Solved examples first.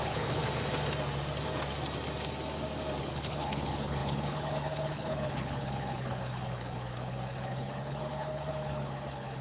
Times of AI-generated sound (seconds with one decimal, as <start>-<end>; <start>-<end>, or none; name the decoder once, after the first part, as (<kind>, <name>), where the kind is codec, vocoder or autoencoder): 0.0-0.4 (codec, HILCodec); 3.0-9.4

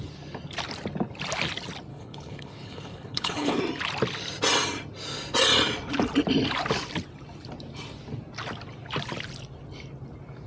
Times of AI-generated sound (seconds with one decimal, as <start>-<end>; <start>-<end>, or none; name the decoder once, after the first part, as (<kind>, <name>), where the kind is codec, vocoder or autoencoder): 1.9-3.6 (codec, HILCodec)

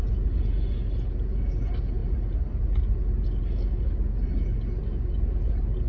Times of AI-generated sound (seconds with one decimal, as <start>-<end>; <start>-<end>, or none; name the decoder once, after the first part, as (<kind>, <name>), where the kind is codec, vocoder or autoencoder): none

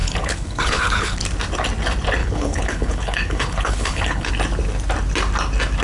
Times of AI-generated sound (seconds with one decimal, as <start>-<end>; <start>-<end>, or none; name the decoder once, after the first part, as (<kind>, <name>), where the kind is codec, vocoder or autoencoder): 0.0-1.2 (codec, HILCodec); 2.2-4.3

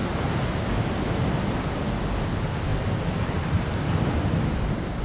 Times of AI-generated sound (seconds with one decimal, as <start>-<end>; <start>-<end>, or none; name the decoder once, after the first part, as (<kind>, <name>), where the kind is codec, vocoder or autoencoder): none